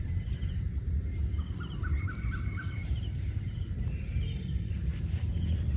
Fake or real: fake